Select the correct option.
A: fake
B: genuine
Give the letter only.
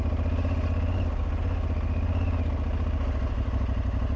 B